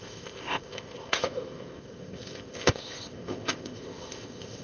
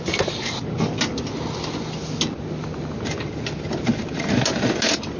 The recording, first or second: second